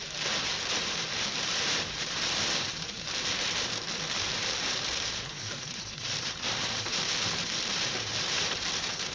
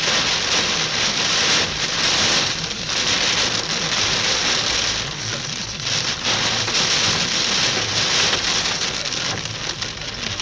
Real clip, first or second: second